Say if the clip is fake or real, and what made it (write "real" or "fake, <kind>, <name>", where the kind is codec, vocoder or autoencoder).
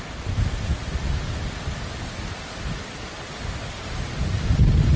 real